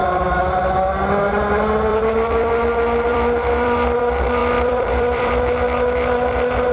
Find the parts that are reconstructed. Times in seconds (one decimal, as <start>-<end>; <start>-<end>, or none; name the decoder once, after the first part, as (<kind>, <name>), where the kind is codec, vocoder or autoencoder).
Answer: 0.0-0.6 (vocoder, BigVGAN v2); 1.9-2.5; 3.1-4.0; 4.4-5.3